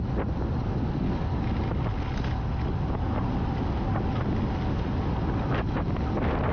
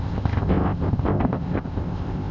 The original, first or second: first